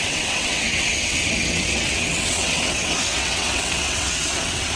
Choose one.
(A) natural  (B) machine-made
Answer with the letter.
B